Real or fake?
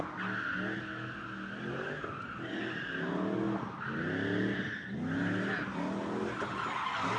real